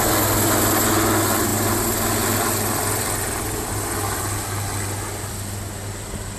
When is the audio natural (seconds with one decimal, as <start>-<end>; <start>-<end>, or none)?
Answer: 0.0-6.4